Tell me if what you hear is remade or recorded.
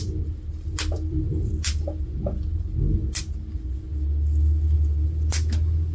recorded